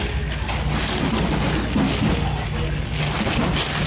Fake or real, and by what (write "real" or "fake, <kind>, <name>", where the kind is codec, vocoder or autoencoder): real